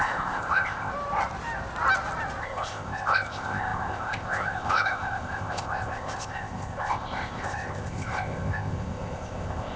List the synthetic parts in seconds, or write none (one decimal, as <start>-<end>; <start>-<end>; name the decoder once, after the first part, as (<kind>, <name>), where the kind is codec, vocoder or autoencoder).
0.0-0.9 (codec, ZipCodec); 2.4-9.8